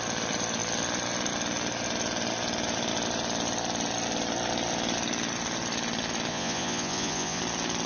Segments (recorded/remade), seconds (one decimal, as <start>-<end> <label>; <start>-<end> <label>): 0.0-6.3 recorded; 6.3-7.4 remade; 7.4-7.9 recorded